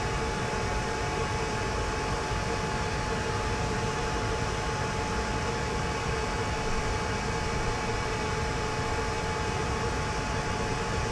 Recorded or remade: recorded